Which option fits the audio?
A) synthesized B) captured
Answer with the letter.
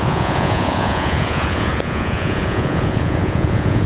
A